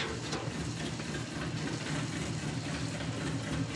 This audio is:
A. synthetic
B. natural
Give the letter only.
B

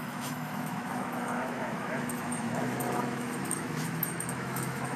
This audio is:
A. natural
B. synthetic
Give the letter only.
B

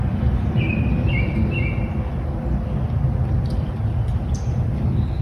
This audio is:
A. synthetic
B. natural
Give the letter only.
B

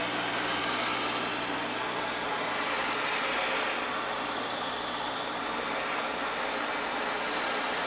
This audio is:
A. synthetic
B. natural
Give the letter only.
B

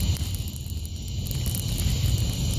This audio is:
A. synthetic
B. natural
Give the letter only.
B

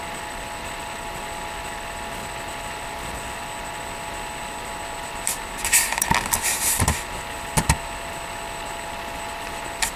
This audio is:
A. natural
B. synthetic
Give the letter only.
A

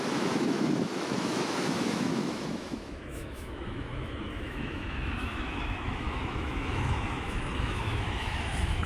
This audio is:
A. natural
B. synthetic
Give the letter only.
B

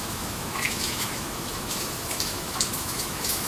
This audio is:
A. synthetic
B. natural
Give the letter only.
A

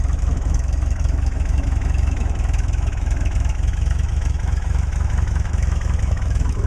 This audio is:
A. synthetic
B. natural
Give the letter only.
A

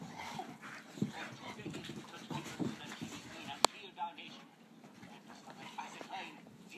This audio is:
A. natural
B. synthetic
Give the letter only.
A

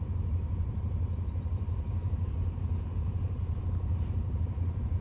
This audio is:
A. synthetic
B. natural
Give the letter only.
B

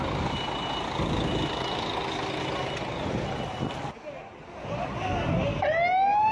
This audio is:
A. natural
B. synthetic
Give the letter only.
A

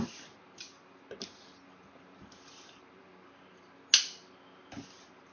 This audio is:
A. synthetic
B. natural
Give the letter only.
B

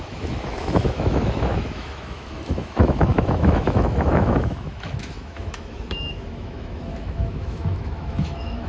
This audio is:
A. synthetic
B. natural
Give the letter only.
A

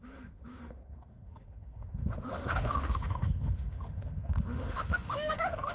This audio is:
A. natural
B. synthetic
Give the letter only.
B